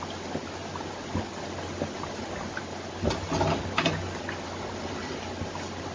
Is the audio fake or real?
real